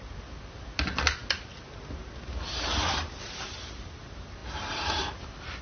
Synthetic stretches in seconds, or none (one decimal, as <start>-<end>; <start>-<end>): none